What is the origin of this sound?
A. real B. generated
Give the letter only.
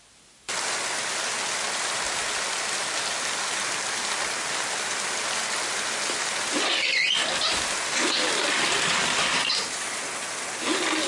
A